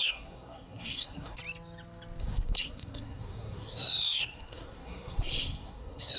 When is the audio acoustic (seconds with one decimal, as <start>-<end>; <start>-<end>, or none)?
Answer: 1.4-2.2

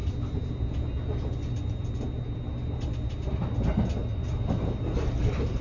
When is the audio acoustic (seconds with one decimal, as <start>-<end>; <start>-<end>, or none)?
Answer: 0.0-5.6

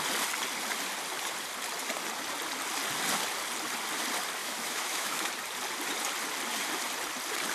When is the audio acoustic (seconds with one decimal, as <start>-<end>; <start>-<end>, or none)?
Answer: 0.0-4.4; 5.3-7.5